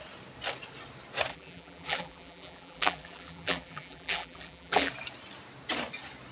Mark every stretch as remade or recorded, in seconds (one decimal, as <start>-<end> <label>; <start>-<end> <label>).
0.0-1.3 recorded; 1.3-4.9 remade; 4.9-6.3 recorded